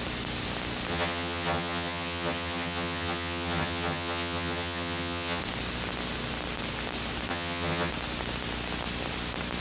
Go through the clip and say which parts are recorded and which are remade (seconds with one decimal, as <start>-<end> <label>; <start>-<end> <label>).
0.0-0.9 recorded; 0.9-5.4 remade; 5.4-7.3 recorded; 7.3-7.9 remade; 7.9-9.6 recorded